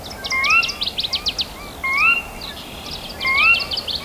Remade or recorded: recorded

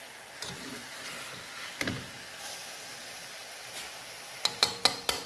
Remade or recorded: recorded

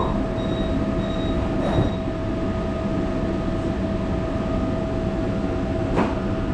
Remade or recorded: recorded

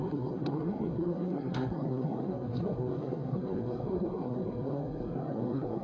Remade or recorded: remade